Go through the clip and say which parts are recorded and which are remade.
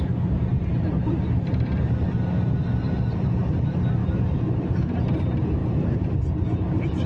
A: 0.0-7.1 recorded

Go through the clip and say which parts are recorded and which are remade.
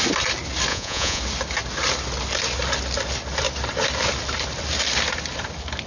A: 0.0-0.7 recorded; 0.7-1.2 remade; 1.2-5.9 recorded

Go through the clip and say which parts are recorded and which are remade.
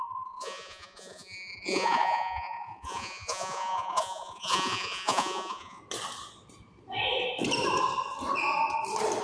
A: 0.0-5.8 remade; 5.8-9.2 recorded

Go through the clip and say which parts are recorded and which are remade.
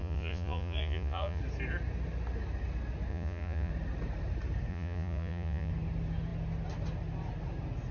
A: 0.0-1.4 remade; 1.4-3.1 recorded; 3.1-3.7 remade; 3.7-4.7 recorded; 4.7-5.7 remade; 5.7-7.9 recorded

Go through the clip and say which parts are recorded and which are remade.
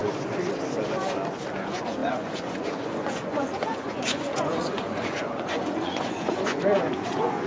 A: 0.0-1.6 recorded; 1.6-7.5 remade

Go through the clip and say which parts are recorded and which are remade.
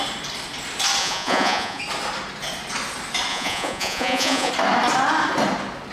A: 0.0-1.0 recorded; 1.0-1.8 remade; 1.8-3.3 recorded; 3.3-4.5 remade; 4.5-5.9 recorded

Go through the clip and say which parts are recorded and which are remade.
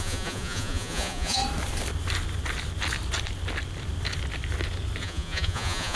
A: 0.0-1.4 remade; 1.4-5.0 recorded; 5.0-6.0 remade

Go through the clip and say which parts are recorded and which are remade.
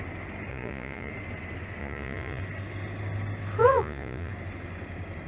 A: 0.0-0.5 recorded; 0.5-1.1 remade; 1.1-1.8 recorded; 1.8-2.4 remade; 2.4-3.6 recorded; 3.6-4.3 remade; 4.3-5.3 recorded